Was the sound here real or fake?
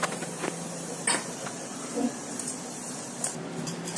real